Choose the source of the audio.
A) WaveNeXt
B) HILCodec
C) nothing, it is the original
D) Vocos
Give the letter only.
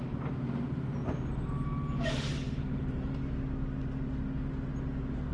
C